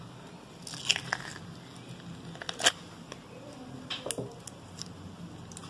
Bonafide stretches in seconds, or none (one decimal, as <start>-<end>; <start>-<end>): 0.0-5.7

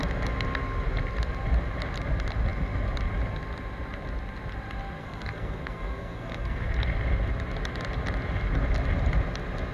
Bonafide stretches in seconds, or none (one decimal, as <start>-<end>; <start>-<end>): 0.0-5.0; 6.7-9.7

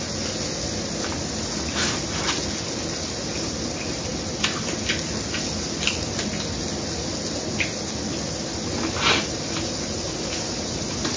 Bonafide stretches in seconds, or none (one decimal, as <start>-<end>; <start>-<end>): 0.0-11.2

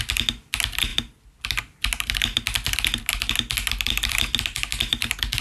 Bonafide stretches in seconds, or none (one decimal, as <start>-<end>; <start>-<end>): 0.0-5.4

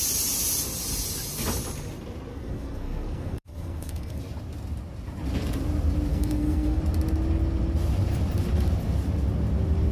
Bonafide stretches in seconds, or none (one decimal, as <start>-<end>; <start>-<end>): 0.0-2.3; 4.2-6.1; 6.8-9.9

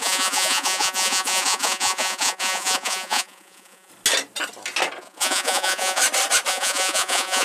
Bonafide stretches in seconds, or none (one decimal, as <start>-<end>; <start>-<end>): 3.9-5.0; 6.0-6.5

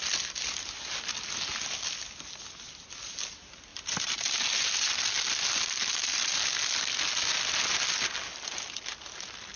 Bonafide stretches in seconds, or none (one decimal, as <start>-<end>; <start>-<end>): 0.0-9.6